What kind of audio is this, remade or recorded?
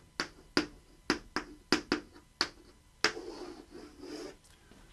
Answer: recorded